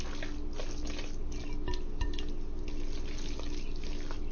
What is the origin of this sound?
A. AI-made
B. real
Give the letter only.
B